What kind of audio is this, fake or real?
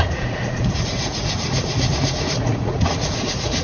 fake